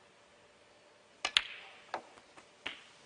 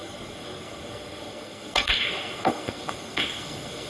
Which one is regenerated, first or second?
second